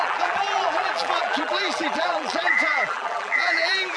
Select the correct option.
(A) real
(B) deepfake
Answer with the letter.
B